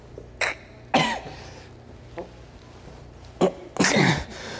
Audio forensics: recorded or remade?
recorded